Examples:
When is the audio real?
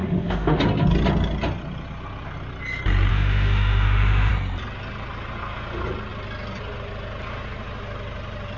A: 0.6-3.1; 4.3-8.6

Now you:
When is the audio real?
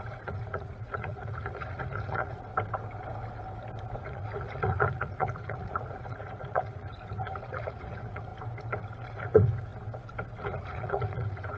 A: 2.5-4.0; 8.3-9.1; 9.7-10.3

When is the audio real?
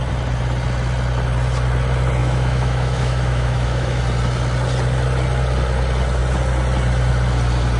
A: 0.0-2.2; 4.0-7.8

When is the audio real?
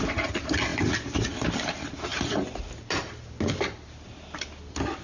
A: 0.0-5.0